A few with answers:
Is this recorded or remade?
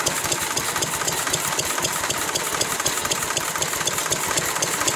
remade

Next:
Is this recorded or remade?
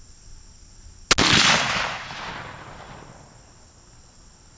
recorded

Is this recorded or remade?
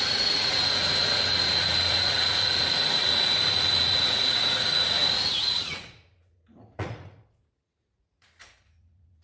remade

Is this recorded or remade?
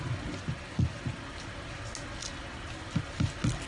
recorded